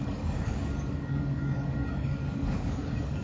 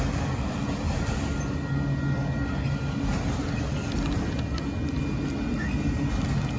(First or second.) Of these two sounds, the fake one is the first